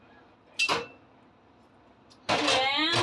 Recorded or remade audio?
recorded